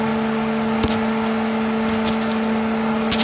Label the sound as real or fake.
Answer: real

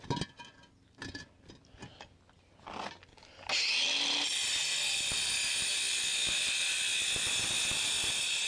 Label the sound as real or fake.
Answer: real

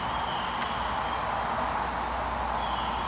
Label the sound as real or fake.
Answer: real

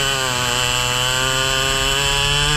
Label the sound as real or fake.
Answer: real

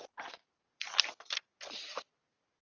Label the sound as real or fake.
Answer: real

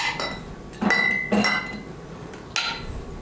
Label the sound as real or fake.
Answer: real